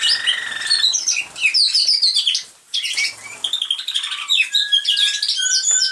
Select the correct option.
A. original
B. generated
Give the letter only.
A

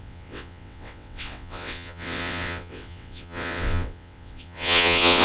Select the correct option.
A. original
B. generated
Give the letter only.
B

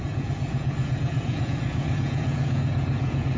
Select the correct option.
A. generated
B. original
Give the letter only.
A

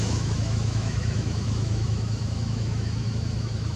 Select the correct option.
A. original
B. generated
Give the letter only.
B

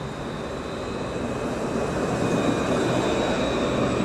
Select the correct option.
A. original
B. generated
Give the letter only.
A